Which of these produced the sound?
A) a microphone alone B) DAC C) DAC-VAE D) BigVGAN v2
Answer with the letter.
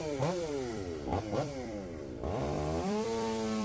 D